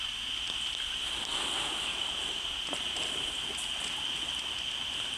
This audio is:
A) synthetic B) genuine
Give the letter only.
B